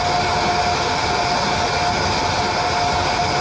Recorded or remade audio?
recorded